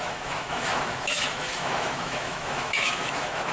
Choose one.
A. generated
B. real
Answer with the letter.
A